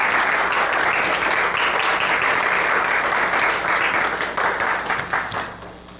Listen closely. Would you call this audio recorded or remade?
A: recorded